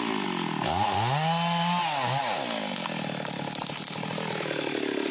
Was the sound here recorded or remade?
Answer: recorded